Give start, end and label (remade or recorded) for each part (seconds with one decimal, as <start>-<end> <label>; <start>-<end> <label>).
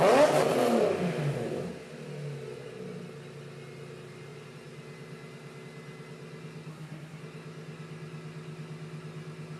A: 0.0-6.7 recorded; 6.7-7.2 remade; 7.2-9.6 recorded